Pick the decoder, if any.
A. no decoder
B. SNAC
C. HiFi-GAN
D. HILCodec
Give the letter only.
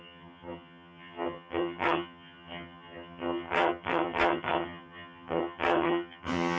C